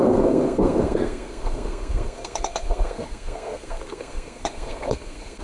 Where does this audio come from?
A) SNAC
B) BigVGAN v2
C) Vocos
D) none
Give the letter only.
A